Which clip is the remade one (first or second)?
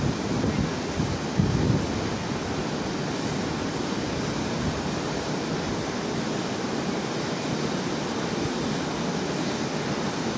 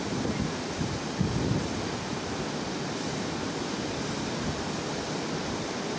second